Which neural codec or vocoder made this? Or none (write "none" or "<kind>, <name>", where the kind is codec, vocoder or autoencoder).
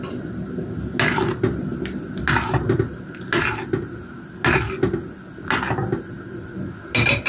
none